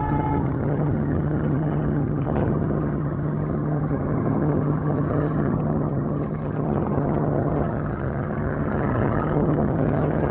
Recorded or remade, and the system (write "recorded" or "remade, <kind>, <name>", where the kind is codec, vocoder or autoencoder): remade, vocoder, HiFi-GAN